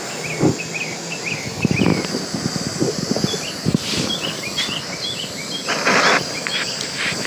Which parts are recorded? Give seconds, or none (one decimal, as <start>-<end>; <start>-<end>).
0.0-7.3